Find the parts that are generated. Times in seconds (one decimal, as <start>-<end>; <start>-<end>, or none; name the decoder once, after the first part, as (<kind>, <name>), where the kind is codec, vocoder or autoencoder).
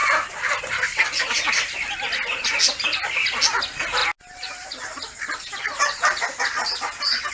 0.0-0.6 (vocoder, BigVGAN v2)